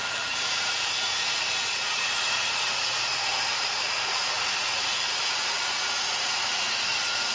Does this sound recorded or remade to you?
remade